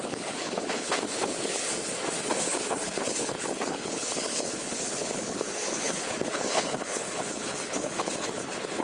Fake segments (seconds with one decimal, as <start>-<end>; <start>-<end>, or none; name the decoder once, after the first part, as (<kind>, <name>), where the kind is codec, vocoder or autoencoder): 0.0-1.7 (codec, HILCodec); 2.3-8.8